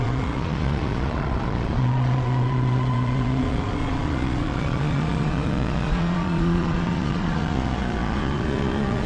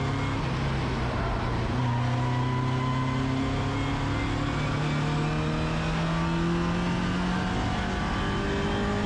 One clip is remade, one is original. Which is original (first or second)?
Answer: second